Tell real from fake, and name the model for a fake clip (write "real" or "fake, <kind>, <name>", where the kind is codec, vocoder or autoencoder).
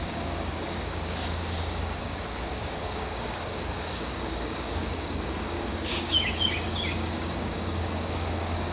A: fake, codec, DAC